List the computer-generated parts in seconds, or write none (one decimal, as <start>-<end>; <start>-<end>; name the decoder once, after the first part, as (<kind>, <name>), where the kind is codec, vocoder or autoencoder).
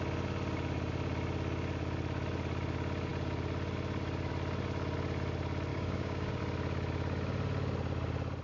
5.7-6.4 (codec, DAC)